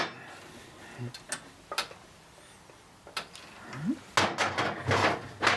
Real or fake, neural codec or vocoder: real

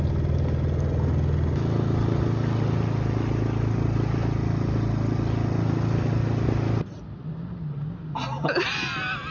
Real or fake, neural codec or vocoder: real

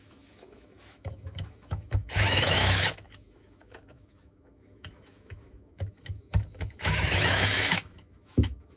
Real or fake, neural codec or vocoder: fake, autoencoder, DAC-VAE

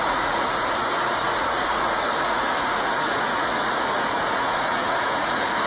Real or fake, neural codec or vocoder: fake, vocoder, Vocos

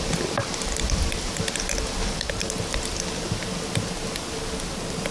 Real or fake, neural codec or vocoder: real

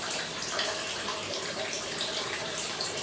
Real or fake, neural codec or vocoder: fake, vocoder, BigVGAN v2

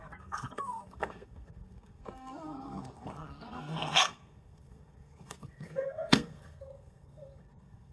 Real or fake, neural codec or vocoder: fake, codec, SNAC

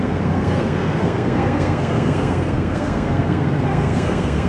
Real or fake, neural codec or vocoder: fake, codec, SNAC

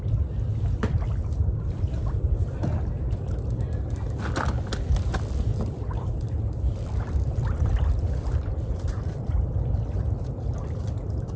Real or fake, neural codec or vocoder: real